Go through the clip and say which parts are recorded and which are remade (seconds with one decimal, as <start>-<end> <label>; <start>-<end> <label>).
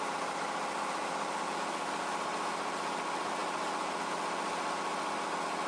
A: 0.0-5.7 recorded